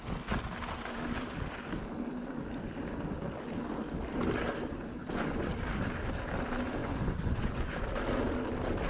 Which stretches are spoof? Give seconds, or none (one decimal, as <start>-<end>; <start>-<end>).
5.0-5.5; 6.8-7.8